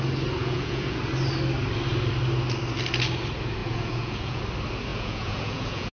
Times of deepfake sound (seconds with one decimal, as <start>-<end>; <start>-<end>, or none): 0.4-1.0; 3.6-4.4; 4.9-5.9

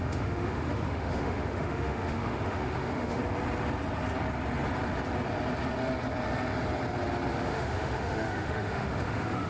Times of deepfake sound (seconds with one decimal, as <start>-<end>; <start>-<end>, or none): 0.0-3.2; 7.4-9.5